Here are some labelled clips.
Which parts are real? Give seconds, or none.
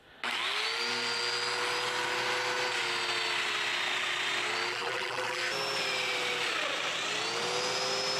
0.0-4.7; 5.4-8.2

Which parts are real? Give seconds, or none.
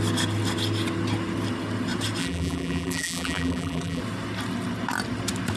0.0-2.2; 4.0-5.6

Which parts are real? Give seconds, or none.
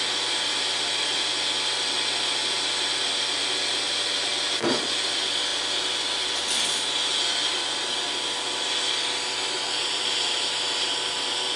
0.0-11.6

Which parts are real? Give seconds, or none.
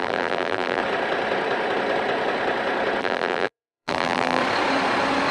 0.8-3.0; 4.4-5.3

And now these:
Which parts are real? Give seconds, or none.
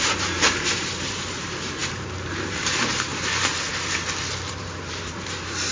3.1-4.5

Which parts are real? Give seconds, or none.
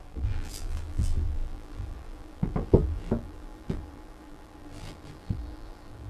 none